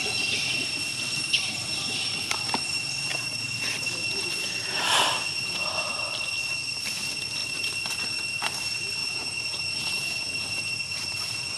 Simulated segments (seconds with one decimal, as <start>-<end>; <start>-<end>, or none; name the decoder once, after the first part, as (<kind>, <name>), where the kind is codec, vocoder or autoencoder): 9.0-10.7 (vocoder, Vocos)